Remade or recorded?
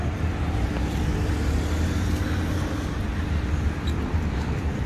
recorded